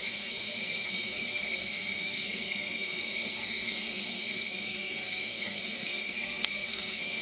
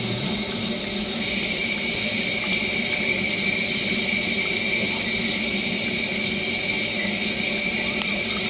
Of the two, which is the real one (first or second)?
second